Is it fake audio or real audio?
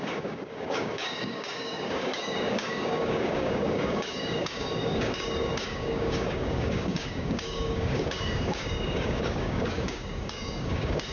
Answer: fake